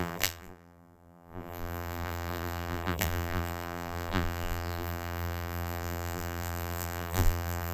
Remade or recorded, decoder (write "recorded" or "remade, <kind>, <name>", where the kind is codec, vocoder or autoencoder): remade, vocoder, BigVGAN v2